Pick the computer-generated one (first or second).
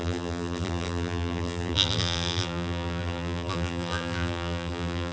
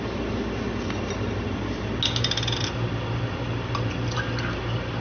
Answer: first